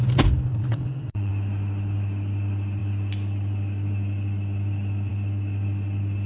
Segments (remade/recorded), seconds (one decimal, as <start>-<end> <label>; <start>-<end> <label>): 0.0-0.7 recorded; 0.7-1.3 remade; 1.3-6.3 recorded